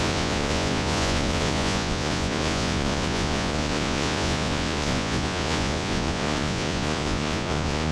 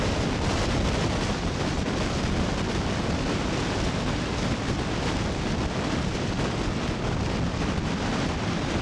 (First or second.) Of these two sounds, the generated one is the first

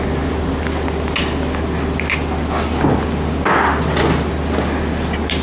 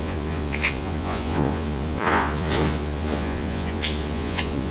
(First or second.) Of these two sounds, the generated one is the second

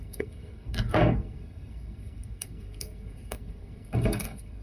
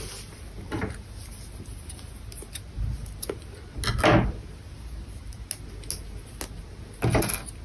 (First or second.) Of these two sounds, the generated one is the first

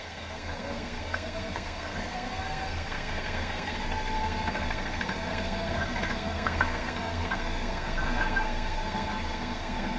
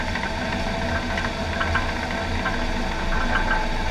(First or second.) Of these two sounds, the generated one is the first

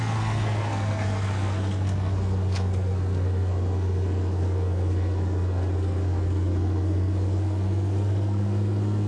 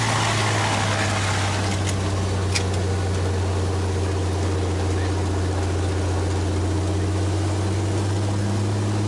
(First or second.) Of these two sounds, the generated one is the first